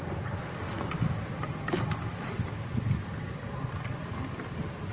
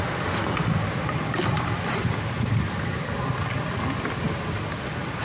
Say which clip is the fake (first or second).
first